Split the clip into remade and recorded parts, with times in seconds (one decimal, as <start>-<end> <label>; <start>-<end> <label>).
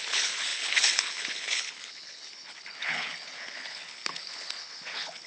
0.0-5.3 remade